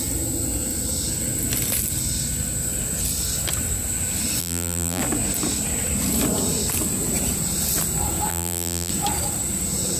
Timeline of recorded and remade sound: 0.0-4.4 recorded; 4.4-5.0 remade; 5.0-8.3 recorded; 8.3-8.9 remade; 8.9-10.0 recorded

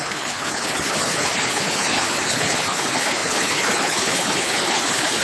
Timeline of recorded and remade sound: 0.0-5.2 remade

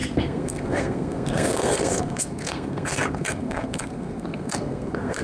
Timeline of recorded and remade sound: 0.0-5.2 remade

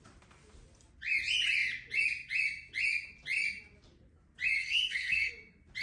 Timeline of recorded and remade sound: 0.0-4.6 recorded; 4.6-5.3 remade; 5.3-5.8 recorded

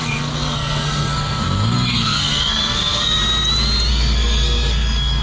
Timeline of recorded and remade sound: 0.0-3.2 remade; 3.2-3.9 recorded; 3.9-5.2 remade

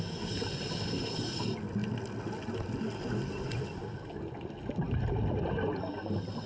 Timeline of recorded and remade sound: 0.0-6.5 recorded

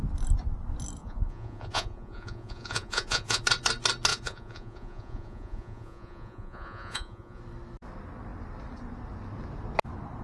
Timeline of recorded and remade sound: 0.0-1.0 recorded; 1.0-3.4 remade; 3.4-4.1 recorded; 4.1-7.4 remade; 7.4-10.2 recorded

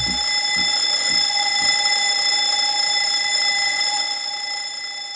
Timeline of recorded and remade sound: 0.0-0.7 recorded; 0.7-1.5 remade; 1.5-3.7 recorded; 3.7-4.3 remade; 4.3-5.2 recorded